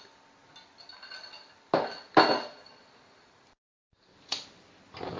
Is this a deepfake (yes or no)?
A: no